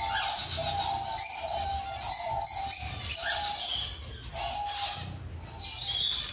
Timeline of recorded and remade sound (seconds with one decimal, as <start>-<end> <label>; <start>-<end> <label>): 0.0-6.3 recorded

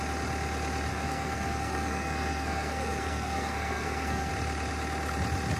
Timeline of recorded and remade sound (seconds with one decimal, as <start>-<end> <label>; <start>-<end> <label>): 0.0-0.9 recorded; 0.9-4.3 remade; 4.3-5.6 recorded

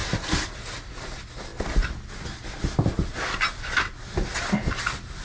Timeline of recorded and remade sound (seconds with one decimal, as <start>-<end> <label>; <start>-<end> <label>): 0.0-5.2 recorded

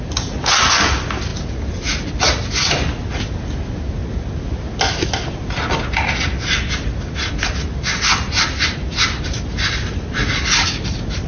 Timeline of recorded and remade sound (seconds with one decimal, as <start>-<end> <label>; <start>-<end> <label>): 0.0-11.3 recorded

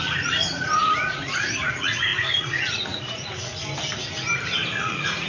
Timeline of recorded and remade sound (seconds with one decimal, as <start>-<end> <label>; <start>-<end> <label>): 0.0-3.5 remade; 3.5-4.7 recorded; 4.7-5.3 remade

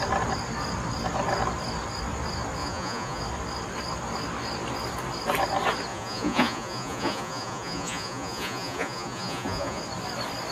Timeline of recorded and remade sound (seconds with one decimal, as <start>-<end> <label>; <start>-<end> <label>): 0.0-2.6 recorded; 2.6-3.2 remade; 3.2-5.9 recorded; 5.9-9.8 remade; 9.8-10.5 recorded

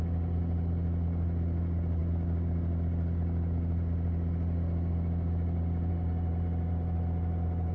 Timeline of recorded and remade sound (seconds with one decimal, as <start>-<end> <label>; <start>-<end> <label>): 0.0-7.7 recorded

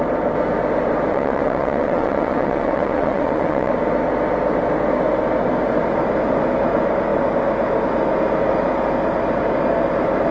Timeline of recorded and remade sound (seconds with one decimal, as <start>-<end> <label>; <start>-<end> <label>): 0.0-1.1 recorded; 1.1-3.7 remade; 3.7-10.3 recorded